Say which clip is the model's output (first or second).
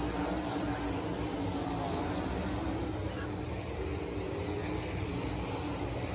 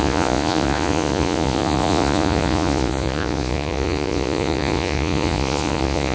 second